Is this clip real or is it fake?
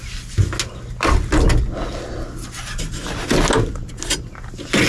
real